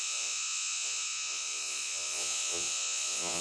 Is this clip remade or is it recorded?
remade